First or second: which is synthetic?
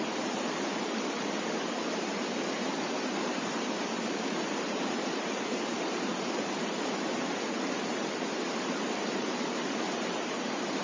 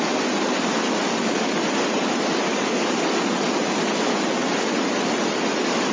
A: first